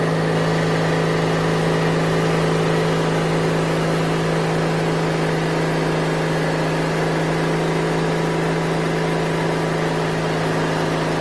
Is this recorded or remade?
recorded